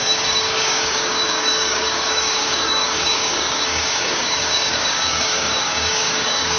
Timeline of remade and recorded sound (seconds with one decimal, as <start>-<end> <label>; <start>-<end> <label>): 0.0-6.6 remade

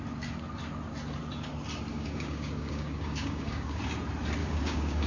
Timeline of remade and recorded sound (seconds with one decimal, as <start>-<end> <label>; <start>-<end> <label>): 0.0-1.9 recorded; 1.9-3.8 remade; 3.8-4.4 recorded; 4.4-5.1 remade